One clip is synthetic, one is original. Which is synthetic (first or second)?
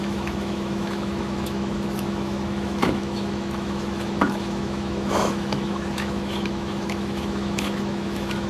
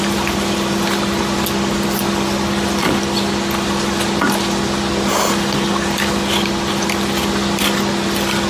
first